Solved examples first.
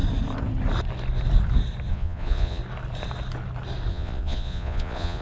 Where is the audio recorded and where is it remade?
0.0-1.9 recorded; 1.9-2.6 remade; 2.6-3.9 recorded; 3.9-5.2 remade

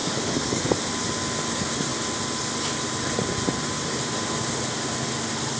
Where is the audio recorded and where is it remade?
0.0-0.6 remade; 0.6-5.6 recorded

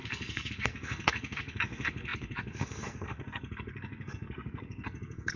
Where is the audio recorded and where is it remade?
0.0-5.4 remade

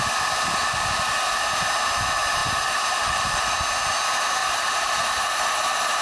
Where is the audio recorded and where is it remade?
0.0-2.4 recorded; 2.4-3.5 remade; 3.5-4.4 recorded; 4.4-6.0 remade